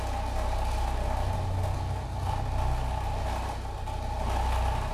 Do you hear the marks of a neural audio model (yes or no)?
no